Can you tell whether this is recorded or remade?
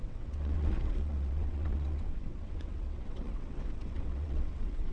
remade